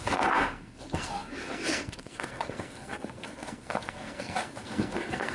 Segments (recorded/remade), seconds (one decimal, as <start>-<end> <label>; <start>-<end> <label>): 0.0-5.3 remade